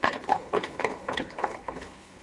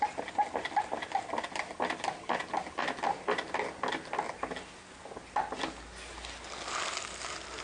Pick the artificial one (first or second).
first